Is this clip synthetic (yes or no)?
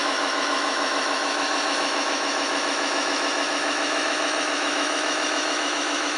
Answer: yes